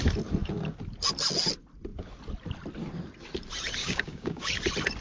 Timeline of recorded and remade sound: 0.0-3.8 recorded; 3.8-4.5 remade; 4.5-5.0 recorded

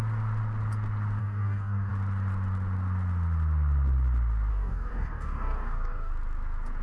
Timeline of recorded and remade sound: 0.0-1.2 recorded; 1.2-1.9 remade; 1.9-4.5 recorded; 4.5-6.1 remade; 6.1-6.8 recorded